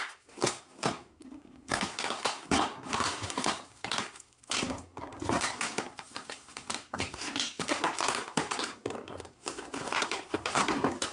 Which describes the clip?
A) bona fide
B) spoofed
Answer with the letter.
B